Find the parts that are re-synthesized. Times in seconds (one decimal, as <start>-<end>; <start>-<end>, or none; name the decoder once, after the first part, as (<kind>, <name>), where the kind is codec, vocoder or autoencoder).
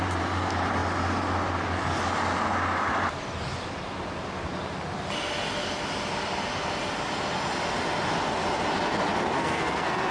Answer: 9.4-10.1 (codec, SNAC)